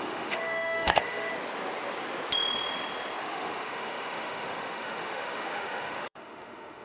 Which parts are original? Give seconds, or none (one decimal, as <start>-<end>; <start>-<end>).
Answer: 1.3-3.2